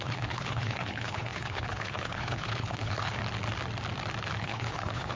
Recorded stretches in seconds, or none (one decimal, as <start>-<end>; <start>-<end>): 3.2-4.4